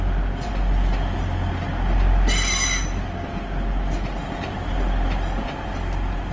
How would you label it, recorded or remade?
recorded